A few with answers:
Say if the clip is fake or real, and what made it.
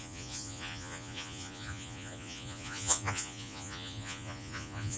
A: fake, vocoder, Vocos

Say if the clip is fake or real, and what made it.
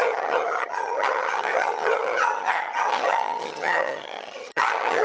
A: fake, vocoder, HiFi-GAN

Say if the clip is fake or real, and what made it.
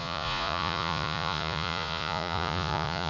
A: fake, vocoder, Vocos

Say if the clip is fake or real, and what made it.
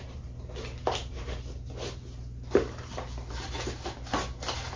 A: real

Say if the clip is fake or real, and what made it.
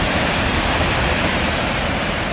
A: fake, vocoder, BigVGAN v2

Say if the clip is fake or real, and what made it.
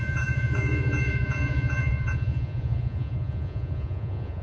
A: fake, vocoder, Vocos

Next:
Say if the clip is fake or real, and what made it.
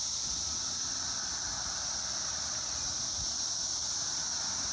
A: fake, vocoder, BigVGAN v2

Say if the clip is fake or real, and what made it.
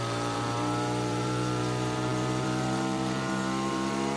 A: fake, vocoder, BigVGAN v2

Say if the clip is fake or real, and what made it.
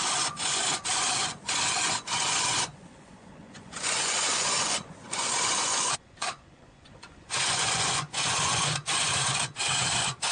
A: fake, vocoder, Vocos